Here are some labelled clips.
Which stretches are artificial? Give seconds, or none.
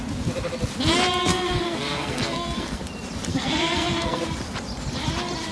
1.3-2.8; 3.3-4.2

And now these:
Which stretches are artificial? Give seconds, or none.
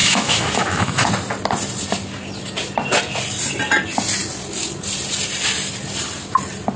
0.0-1.1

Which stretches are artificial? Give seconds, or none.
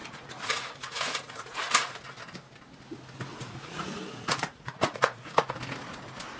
0.0-2.0; 3.3-5.4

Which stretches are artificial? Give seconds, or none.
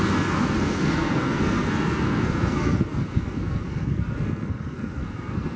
0.0-5.6